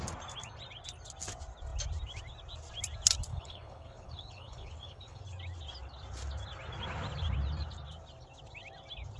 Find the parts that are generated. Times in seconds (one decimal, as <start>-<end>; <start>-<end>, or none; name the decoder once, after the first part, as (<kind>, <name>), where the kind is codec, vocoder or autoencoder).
3.3-5.2 (codec, HILCodec)

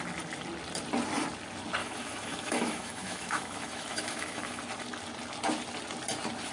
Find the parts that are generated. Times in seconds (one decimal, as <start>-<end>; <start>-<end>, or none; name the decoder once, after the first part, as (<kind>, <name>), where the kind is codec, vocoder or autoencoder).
1.8-4.6 (autoencoder, DAC-VAE)

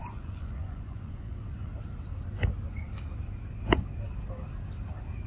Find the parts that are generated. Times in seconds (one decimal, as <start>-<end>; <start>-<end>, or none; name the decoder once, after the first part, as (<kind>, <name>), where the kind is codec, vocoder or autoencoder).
0.0-1.7 (vocoder, Vocos)